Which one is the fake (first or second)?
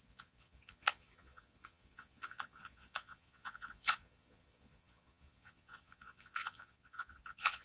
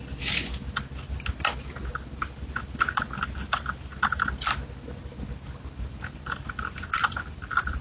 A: first